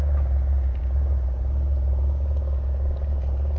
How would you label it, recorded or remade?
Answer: recorded